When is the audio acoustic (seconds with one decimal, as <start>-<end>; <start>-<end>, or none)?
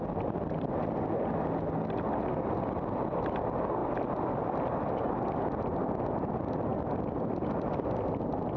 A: 0.0-8.6